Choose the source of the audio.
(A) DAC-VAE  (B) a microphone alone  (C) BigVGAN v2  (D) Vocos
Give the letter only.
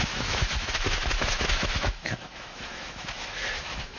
A